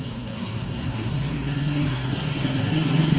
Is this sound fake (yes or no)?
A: yes